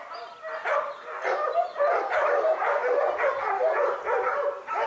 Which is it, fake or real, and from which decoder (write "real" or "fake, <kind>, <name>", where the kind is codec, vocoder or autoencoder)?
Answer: real